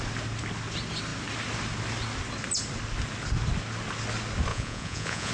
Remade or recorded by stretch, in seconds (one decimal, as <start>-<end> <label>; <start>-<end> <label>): 0.0-4.5 recorded; 4.5-5.3 remade